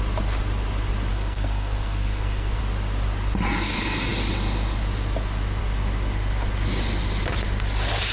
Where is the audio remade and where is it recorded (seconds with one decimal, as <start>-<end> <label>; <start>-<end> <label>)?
0.0-1.1 recorded; 1.1-2.6 remade; 2.6-8.1 recorded